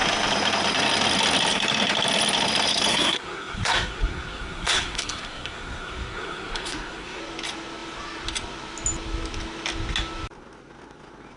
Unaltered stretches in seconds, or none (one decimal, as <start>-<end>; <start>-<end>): 0.0-2.9; 7.2-11.4